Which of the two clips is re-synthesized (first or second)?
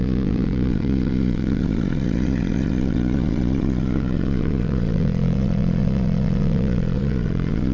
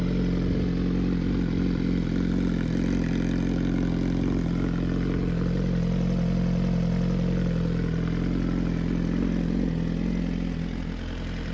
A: first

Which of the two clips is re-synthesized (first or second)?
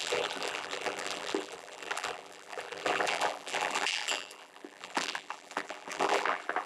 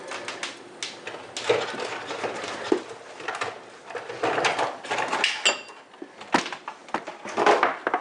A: first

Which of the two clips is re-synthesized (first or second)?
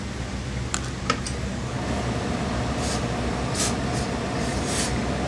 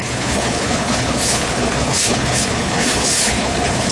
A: second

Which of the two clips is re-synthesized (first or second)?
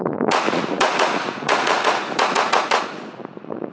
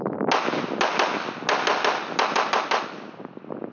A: first